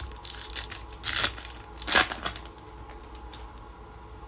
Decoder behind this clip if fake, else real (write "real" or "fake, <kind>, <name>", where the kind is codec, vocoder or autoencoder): real